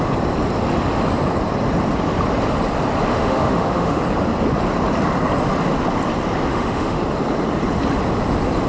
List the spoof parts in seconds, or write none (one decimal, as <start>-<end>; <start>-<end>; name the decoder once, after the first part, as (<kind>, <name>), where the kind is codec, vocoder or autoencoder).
3.1-4.0 (autoencoder, DAC-VAE); 6.5-7.0